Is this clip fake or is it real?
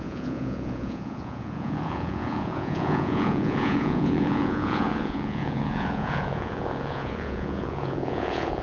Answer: fake